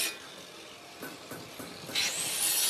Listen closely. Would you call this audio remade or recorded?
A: recorded